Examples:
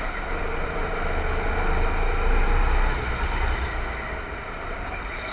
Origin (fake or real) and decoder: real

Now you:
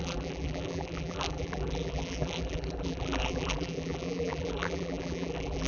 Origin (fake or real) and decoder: fake, vocoder, BigVGAN v2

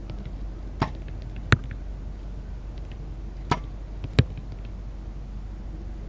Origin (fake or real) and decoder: real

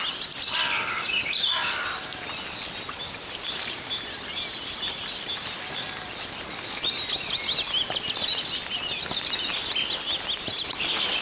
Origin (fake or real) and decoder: real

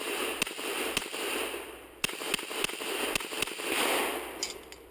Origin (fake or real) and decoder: real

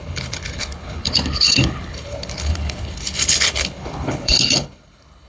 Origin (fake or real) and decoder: fake, codec, HILCodec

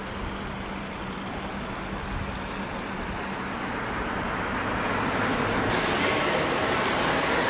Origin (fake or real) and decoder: real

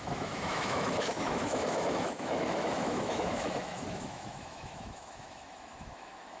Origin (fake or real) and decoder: fake, autoencoder, DAC-VAE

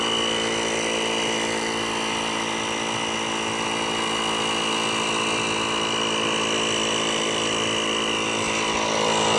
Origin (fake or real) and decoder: real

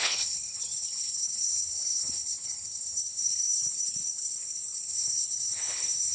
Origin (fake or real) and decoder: fake, codec, HILCodec